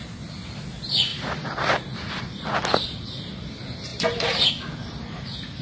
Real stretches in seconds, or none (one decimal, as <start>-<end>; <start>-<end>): 0.0-1.1; 2.2-3.9; 4.5-5.6